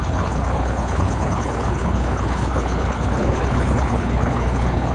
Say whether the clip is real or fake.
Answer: fake